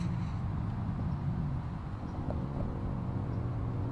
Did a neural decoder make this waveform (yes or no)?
yes